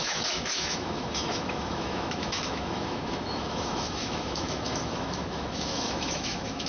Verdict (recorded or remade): remade